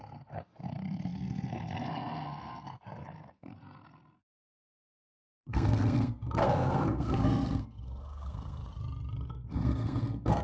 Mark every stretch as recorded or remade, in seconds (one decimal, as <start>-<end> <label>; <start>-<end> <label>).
0.0-8.6 remade; 8.6-9.3 recorded; 9.3-10.4 remade